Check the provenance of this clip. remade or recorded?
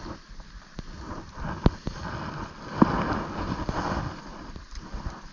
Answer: recorded